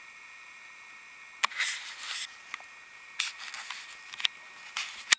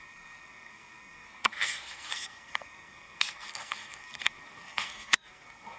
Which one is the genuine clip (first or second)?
first